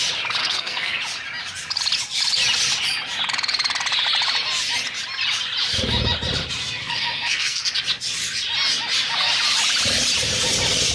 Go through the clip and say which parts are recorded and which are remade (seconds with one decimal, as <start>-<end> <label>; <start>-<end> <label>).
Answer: 0.0-0.4 recorded; 0.4-1.0 remade; 1.0-6.8 recorded; 6.8-7.6 remade; 7.6-10.9 recorded